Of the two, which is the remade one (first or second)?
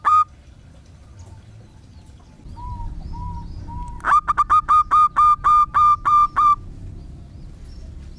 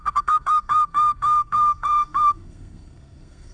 second